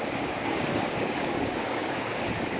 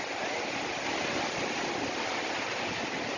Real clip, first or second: second